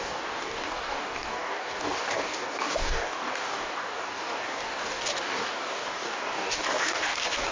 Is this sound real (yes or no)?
no